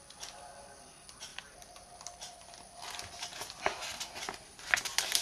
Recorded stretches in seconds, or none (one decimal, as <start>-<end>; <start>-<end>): 0.0-5.2